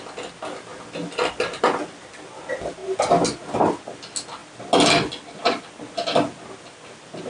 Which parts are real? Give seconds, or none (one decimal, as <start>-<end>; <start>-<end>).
0.0-7.3